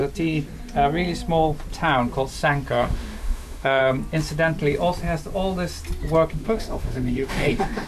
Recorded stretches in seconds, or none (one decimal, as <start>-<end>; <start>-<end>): 0.0-2.7; 3.8-6.3